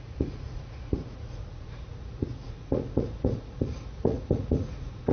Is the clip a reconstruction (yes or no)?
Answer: yes